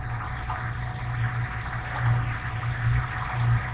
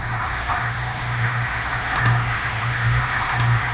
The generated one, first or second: second